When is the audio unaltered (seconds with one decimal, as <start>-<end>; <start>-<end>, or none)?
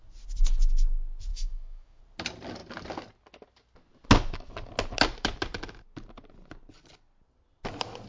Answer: 0.0-1.3; 2.0-8.1